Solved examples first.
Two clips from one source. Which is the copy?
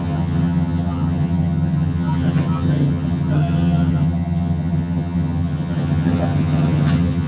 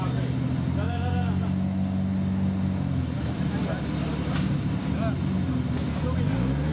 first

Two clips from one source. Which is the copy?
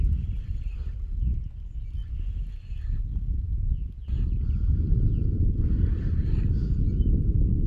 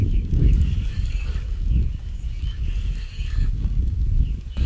second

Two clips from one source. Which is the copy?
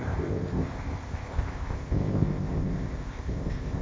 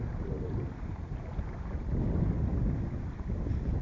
first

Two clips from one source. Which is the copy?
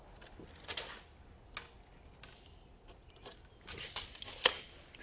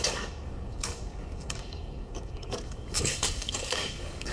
second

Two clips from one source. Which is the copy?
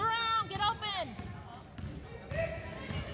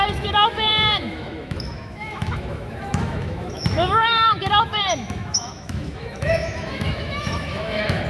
second